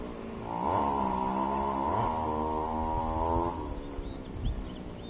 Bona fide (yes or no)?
yes